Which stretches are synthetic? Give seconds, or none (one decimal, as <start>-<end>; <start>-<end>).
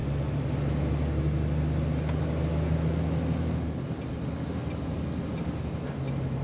none